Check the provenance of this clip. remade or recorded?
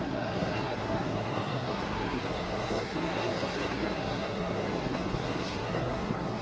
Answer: remade